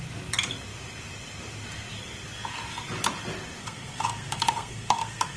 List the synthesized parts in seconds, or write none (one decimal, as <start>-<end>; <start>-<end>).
3.6-5.4